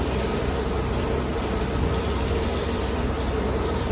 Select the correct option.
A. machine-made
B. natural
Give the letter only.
A